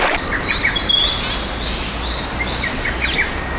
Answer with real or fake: real